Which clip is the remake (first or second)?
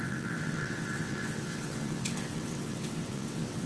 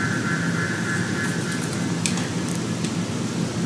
first